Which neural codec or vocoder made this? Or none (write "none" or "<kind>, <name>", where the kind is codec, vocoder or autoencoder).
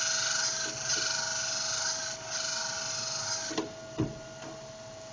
none